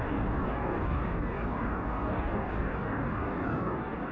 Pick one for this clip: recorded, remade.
remade